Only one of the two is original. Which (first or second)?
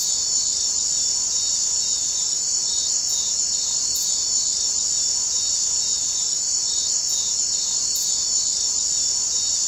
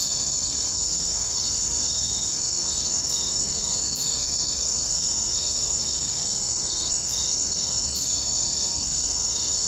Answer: first